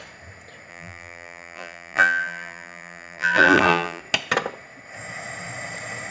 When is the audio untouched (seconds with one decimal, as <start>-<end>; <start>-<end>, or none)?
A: 0.0-0.7; 4.0-6.1